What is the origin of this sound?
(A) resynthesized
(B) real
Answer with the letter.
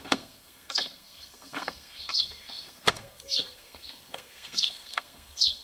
A